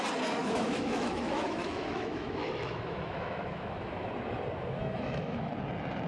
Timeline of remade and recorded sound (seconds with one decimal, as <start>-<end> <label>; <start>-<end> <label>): 0.0-0.4 recorded; 0.4-4.1 remade; 4.1-4.8 recorded; 4.8-5.5 remade; 5.5-6.1 recorded